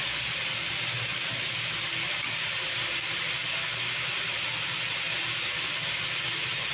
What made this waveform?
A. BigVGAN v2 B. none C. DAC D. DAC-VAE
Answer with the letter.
B